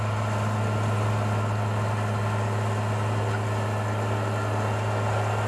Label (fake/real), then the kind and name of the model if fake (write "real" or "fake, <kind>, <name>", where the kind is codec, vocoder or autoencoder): real